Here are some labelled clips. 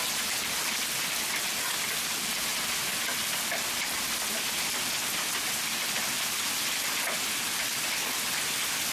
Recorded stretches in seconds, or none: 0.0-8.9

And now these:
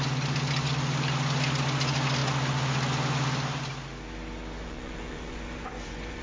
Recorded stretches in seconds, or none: 0.0-4.6

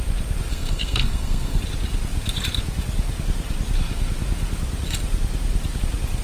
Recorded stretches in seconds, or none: 0.0-0.5; 1.6-6.2

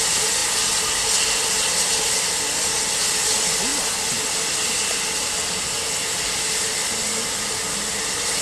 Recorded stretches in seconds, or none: 0.0-8.4

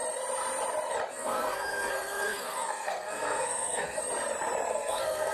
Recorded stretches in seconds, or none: 0.0-1.1; 4.0-4.7

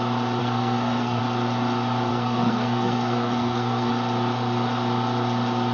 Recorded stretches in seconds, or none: 0.0-0.4; 1.2-2.1; 3.9-5.7

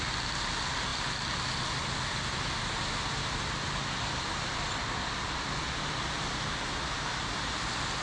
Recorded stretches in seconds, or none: 0.0-8.0